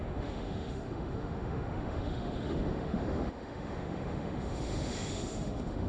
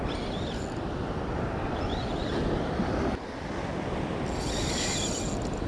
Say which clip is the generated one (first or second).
first